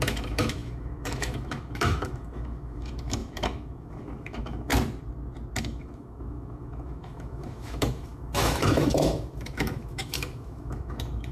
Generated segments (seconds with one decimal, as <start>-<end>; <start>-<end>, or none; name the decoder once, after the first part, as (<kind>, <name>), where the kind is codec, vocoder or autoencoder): 0.0-4.7 (autoencoder, DAC-VAE); 5.6-11.3